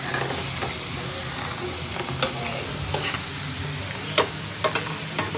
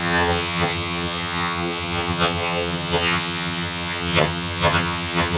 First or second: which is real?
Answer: first